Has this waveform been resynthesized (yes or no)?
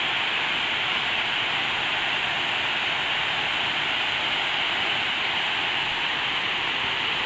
no